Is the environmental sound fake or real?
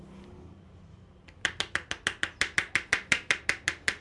real